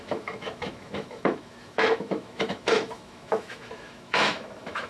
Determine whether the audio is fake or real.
fake